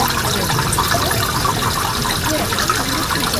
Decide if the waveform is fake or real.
real